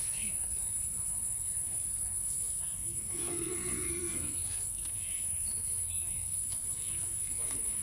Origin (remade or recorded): remade